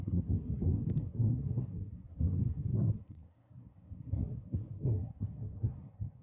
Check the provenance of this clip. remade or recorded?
remade